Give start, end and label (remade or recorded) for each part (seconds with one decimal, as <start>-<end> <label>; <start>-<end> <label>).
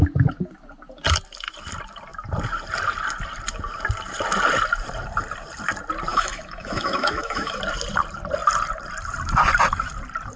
0.0-6.1 recorded; 6.1-7.6 remade; 7.6-10.4 recorded